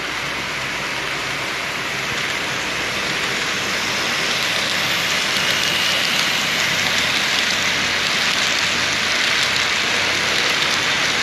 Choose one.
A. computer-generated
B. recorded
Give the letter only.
B